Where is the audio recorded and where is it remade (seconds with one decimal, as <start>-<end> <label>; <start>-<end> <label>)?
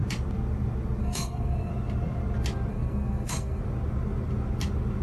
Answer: 0.0-1.0 recorded; 1.0-1.7 remade; 1.7-2.7 recorded; 2.7-3.6 remade; 3.6-5.0 recorded